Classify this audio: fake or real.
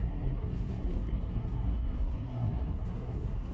fake